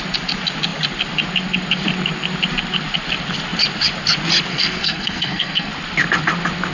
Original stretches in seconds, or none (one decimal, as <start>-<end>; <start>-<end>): 0.0-4.5; 5.7-6.7